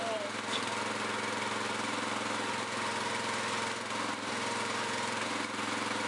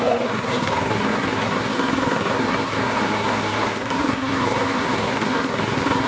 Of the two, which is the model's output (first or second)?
second